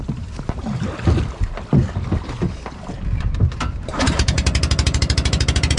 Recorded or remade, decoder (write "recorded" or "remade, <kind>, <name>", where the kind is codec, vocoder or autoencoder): remade, vocoder, BigVGAN v2